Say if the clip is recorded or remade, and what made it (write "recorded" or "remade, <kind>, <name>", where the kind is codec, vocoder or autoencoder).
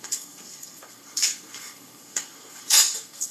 remade, codec, SNAC